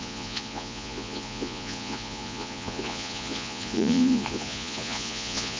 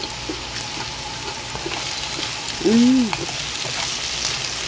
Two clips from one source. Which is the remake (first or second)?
first